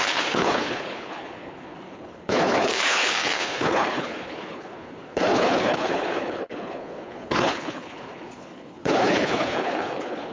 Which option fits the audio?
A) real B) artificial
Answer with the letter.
B